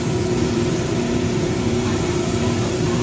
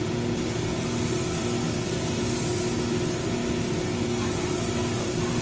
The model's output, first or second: first